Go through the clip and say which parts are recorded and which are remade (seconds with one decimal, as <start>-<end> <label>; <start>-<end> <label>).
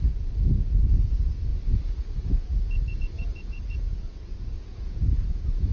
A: 0.0-5.7 remade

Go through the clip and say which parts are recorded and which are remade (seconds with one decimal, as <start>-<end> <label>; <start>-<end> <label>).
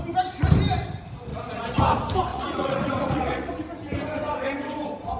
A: 0.0-1.3 recorded; 1.3-1.8 remade; 1.8-2.3 recorded; 2.3-3.5 remade; 3.5-5.2 recorded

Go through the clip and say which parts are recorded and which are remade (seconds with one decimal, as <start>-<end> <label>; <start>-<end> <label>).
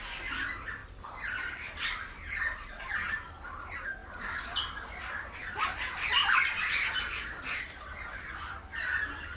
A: 0.0-0.8 recorded; 0.8-2.9 remade; 2.9-9.4 recorded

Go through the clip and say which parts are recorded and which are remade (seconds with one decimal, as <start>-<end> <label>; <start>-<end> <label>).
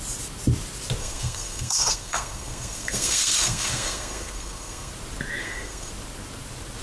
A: 0.0-1.0 recorded; 1.0-4.9 remade; 4.9-5.4 recorded; 5.4-5.9 remade; 5.9-6.8 recorded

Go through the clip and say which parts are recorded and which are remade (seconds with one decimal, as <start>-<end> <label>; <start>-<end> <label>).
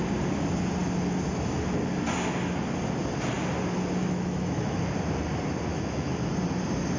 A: 0.0-4.0 recorded; 4.0-4.8 remade; 4.8-5.7 recorded; 5.7-6.3 remade; 6.3-7.0 recorded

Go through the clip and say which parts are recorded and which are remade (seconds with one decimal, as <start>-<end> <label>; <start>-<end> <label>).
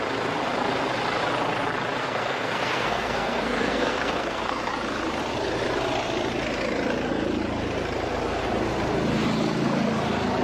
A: 0.0-2.0 recorded; 2.0-4.7 remade; 4.7-10.4 recorded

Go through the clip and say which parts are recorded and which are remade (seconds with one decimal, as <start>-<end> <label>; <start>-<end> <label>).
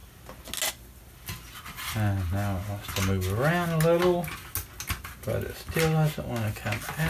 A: 0.0-7.1 recorded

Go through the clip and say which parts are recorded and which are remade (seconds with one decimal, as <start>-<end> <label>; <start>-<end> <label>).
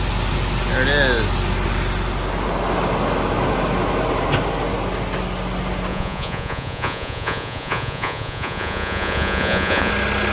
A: 0.0-5.9 recorded; 5.9-9.9 remade; 9.9-10.3 recorded